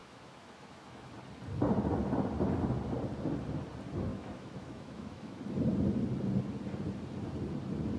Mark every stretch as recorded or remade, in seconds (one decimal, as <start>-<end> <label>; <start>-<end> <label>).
0.0-1.1 remade; 1.1-4.1 recorded; 4.1-5.4 remade; 5.4-8.0 recorded